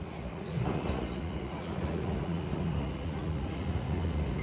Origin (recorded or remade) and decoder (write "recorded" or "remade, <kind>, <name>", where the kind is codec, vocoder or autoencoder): remade, vocoder, Vocos